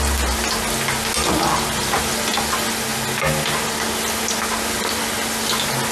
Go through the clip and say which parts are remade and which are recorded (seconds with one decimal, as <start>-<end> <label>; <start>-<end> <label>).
0.0-5.9 recorded